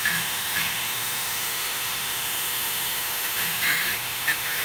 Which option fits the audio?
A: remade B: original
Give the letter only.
A